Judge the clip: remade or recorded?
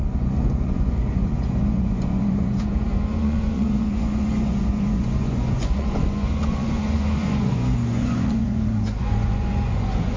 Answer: remade